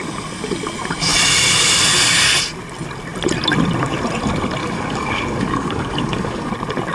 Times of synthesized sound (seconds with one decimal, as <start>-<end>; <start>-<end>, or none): 4.6-6.5